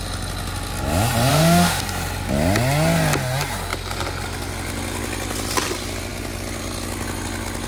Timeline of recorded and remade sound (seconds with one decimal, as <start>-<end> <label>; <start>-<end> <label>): 0.0-1.3 recorded; 1.3-1.8 remade; 1.8-7.7 recorded